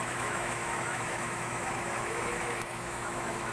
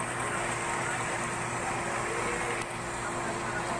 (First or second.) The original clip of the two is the second